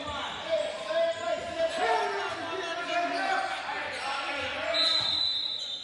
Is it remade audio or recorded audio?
recorded